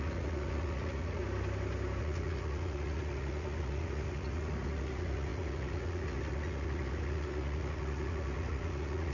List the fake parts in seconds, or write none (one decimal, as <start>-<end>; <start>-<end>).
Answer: 0.0-1.2; 2.0-9.1